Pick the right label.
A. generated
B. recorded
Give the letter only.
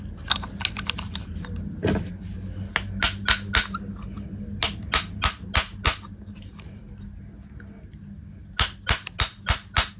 B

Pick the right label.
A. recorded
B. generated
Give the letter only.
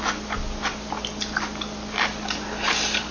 A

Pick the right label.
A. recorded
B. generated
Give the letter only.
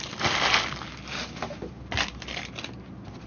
A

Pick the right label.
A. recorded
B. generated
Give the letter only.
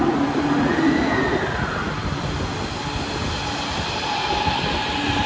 A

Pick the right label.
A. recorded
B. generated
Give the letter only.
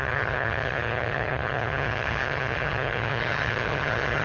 B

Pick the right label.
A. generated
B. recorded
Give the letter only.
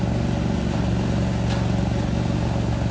B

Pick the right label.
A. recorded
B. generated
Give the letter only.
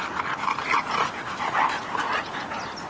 A